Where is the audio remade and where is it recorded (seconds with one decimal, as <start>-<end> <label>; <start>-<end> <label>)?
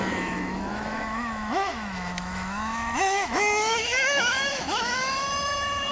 0.0-5.9 remade